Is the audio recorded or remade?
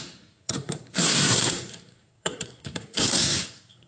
remade